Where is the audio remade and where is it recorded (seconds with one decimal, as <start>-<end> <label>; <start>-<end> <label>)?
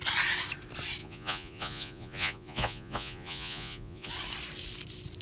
0.0-1.0 recorded; 1.0-4.1 remade; 4.1-5.2 recorded